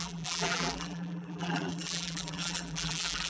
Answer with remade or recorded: remade